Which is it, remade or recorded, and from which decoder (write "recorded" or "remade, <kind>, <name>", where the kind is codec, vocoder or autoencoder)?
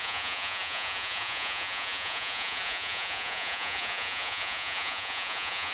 remade, vocoder, Vocos